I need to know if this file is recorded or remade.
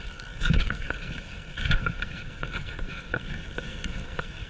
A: remade